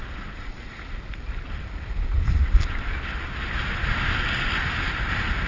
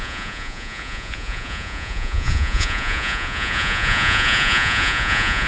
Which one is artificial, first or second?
second